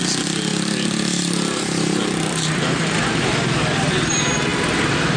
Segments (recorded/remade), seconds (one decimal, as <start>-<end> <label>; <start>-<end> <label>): 0.0-0.5 recorded; 0.5-3.6 remade; 3.6-4.5 recorded; 4.5-5.2 remade